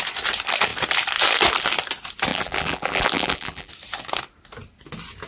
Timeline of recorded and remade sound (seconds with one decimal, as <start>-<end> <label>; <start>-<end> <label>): 0.0-2.3 recorded; 2.3-3.7 remade; 3.7-5.3 recorded